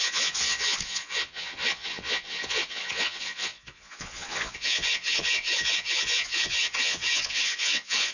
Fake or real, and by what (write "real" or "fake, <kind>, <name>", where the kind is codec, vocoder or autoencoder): fake, vocoder, Vocos